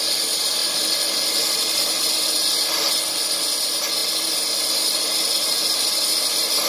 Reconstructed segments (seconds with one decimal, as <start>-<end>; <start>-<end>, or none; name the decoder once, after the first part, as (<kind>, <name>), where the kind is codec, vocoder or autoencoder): none